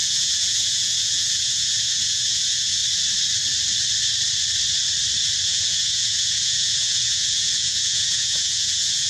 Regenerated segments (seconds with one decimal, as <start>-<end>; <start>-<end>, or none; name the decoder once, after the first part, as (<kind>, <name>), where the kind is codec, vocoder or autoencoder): 0.0-2.8 (vocoder, Vocos); 5.4-9.1